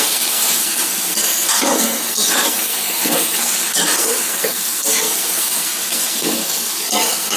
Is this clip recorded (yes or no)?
no